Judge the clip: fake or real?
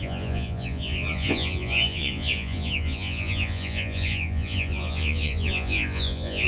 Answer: fake